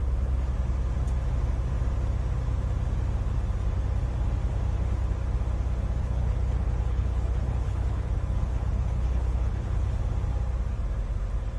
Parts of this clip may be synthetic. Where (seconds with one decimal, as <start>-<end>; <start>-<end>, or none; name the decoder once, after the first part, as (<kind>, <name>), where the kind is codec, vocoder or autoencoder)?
6.0-10.0 (codec, HILCodec)